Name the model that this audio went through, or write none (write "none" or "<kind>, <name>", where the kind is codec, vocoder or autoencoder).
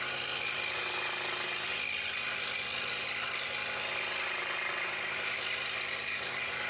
none